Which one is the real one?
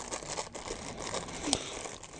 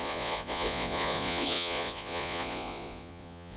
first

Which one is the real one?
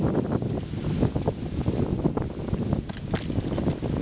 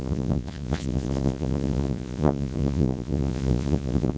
first